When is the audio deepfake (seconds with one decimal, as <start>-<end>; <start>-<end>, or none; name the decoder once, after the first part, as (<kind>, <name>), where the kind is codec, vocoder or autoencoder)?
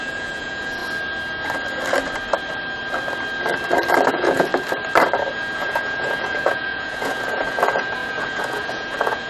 0.0-0.8 (vocoder, Vocos); 4.1-4.5; 5.3-9.3